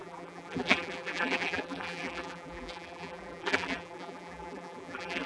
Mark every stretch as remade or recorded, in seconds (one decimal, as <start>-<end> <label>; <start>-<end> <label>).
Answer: 0.0-5.3 remade